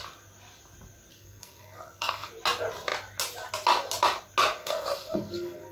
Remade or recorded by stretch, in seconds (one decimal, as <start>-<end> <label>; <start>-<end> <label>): 0.0-1.1 recorded; 1.1-2.3 remade; 2.3-4.6 recorded; 4.6-5.7 remade